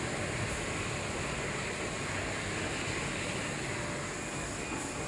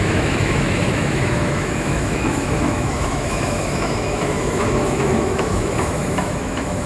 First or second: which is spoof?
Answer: second